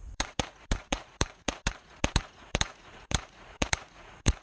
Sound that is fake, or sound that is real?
fake